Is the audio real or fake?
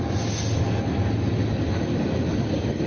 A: real